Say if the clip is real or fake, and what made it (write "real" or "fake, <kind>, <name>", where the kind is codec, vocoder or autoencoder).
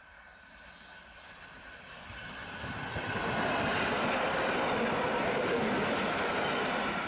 real